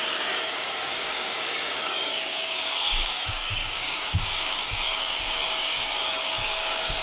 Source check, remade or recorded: remade